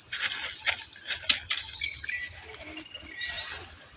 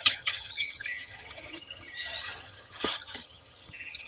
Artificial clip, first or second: second